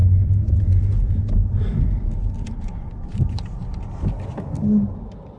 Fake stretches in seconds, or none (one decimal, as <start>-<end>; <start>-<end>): 0.9-4.1